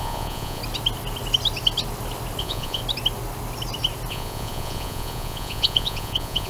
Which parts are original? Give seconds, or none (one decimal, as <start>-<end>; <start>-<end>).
0.6-2.4; 2.8-4.1